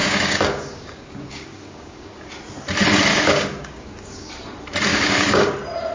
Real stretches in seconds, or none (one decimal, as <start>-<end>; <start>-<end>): 2.3-3.1; 4.3-4.9; 5.5-5.9

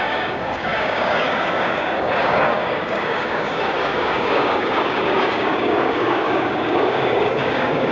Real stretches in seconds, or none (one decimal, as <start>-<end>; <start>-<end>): none

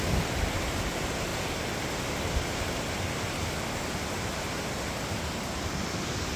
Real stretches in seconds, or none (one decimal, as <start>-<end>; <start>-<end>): 0.0-6.4

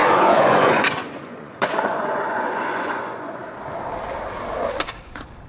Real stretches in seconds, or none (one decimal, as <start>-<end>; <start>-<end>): 3.4-5.0

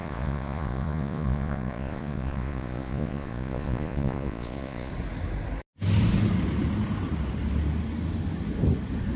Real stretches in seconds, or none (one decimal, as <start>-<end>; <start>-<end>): 4.9-9.2